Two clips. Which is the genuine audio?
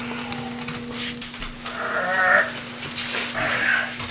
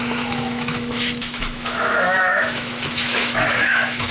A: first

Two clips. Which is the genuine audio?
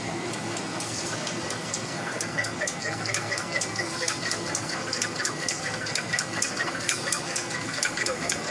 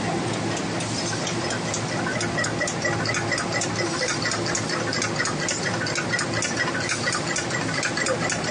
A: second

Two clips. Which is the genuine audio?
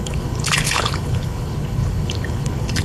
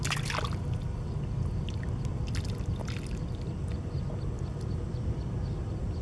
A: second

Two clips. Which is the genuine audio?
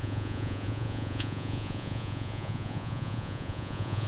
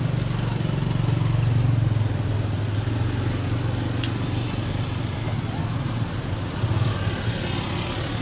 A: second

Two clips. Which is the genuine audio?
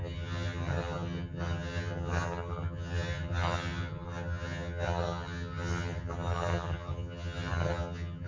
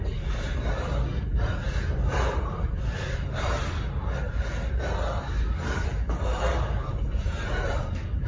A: second